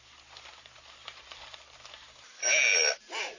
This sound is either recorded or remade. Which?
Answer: recorded